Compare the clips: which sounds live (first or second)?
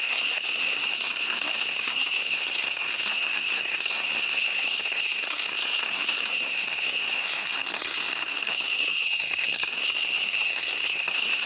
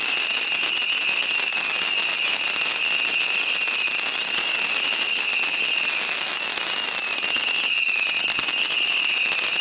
second